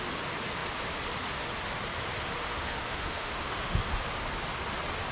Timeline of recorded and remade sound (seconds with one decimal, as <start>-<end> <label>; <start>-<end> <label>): 0.0-2.4 recorded; 2.4-3.8 remade; 3.8-5.1 recorded